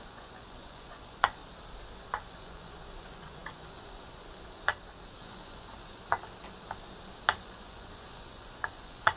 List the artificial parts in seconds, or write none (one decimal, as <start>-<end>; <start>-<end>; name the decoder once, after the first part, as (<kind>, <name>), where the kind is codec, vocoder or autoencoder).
0.0-1.4 (vocoder, Vocos); 2.2-4.7; 5.2-6.2; 7.4-9.2